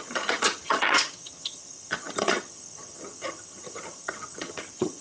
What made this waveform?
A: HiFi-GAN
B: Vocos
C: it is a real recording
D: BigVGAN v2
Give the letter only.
A